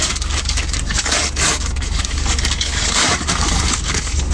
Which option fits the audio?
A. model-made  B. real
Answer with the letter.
A